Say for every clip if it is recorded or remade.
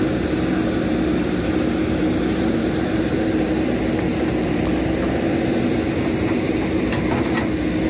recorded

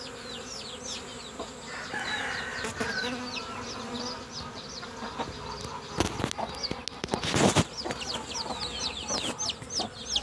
recorded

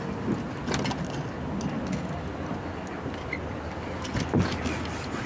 recorded